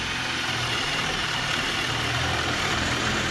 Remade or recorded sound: remade